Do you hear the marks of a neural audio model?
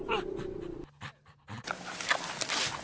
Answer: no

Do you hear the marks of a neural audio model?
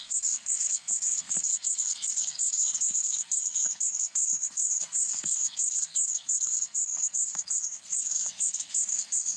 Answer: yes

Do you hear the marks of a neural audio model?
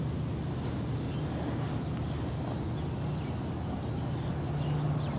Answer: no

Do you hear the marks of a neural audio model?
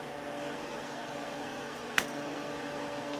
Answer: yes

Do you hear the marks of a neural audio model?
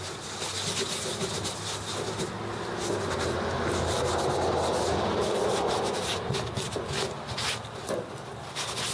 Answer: no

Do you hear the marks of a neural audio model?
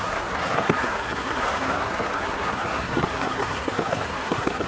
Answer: yes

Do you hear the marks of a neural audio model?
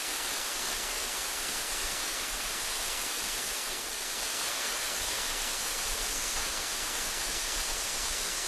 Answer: yes